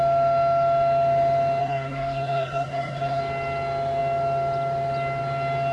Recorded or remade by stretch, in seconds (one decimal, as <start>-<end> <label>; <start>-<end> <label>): 0.0-1.6 recorded; 1.6-3.2 remade; 3.2-5.7 recorded